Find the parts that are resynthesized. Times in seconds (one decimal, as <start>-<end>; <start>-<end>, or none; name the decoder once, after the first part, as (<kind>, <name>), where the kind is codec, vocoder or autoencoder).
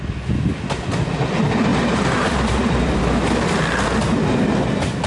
1.7-3.0 (vocoder, BigVGAN v2)